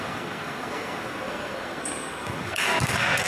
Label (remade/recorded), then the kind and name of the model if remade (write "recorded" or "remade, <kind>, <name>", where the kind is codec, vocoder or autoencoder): remade, codec, SNAC